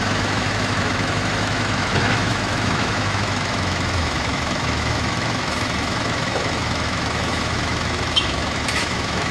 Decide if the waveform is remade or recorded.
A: remade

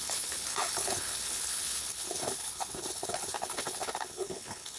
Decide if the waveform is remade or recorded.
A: remade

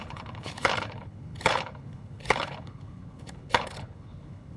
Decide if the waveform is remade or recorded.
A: remade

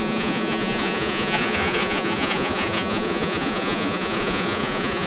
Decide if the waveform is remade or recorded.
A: remade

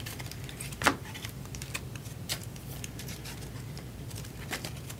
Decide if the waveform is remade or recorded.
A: remade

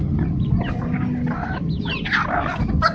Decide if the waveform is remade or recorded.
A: remade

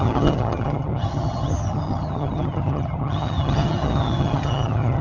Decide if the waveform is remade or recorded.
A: remade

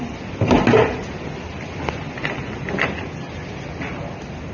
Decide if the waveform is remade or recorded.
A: recorded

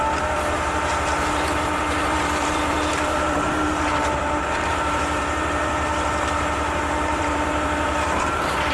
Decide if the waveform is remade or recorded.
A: remade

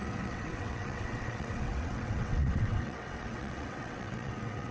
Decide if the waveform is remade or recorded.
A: remade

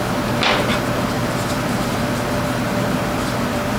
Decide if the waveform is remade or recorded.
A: recorded